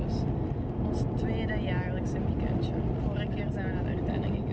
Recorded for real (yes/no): yes